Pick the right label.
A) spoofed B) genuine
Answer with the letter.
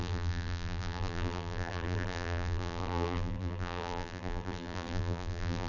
A